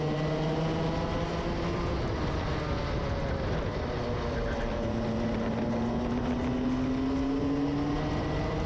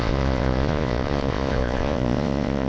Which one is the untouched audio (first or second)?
first